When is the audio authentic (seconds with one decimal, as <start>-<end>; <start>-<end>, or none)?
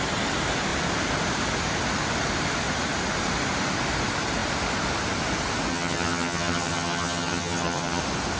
0.0-5.7; 8.0-8.4